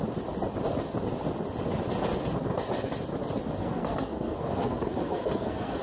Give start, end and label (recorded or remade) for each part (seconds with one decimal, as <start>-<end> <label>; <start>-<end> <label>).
0.0-3.6 recorded; 3.6-5.8 remade